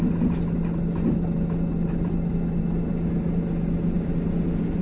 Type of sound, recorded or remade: recorded